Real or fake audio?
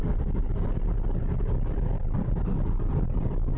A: real